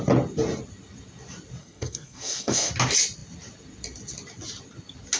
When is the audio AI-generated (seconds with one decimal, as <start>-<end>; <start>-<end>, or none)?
1.6-2.7